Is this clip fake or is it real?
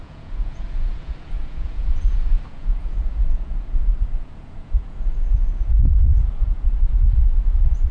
fake